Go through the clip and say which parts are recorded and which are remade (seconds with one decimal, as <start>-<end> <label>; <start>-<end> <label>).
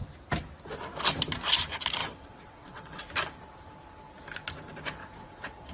0.0-2.0 recorded; 2.0-3.0 remade; 3.0-5.0 recorded; 5.0-5.7 remade